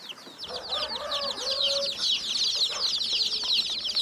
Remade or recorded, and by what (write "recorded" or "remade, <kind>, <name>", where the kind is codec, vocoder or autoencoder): recorded